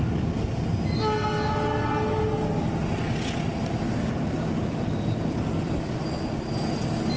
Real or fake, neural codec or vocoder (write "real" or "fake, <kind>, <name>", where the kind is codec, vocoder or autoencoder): real